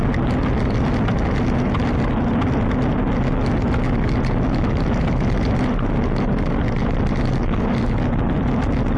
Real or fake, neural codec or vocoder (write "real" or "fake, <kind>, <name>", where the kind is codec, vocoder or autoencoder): real